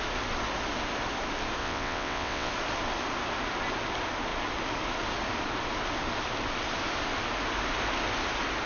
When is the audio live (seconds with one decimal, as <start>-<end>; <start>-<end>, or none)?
0.0-1.6; 2.5-8.7